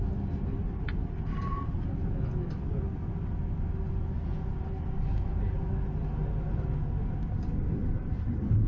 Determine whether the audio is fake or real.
real